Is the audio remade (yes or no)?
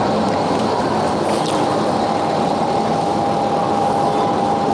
no